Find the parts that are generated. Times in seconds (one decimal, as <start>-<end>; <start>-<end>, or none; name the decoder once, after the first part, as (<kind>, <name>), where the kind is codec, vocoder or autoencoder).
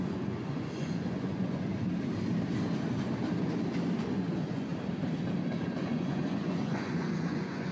0.0-1.7 (vocoder, Vocos); 4.1-4.7; 5.9-7.7